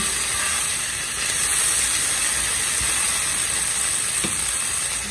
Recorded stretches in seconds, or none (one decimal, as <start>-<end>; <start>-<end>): 0.0-5.1